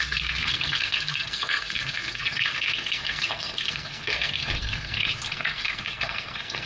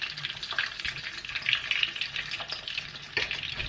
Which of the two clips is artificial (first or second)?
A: first